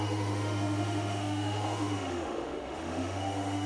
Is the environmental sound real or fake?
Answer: fake